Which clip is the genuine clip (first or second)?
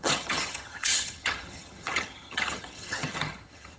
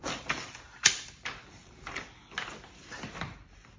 second